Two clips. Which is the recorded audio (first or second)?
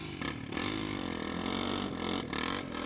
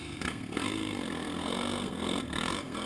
first